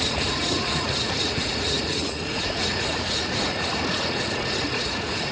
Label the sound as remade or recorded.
remade